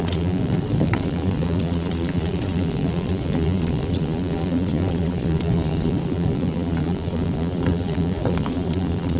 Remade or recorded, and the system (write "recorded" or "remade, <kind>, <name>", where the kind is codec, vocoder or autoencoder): remade, vocoder, Vocos